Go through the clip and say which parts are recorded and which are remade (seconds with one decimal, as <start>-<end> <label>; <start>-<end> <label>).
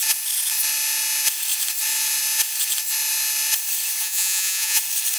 0.0-4.0 recorded; 4.0-4.8 remade; 4.8-5.2 recorded